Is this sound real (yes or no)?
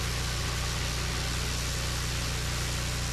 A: yes